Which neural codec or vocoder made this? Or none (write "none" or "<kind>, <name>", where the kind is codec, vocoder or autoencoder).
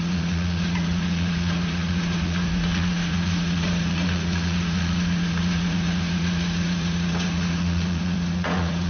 vocoder, Vocos